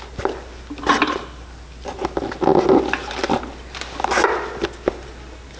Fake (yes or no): no